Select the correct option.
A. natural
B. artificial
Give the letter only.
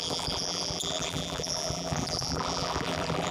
B